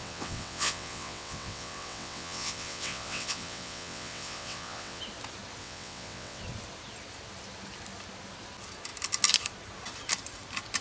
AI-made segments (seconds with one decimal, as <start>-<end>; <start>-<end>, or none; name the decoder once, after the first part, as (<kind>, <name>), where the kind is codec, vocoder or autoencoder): 0.0-5.0 (vocoder, WaveNeXt); 5.6-6.4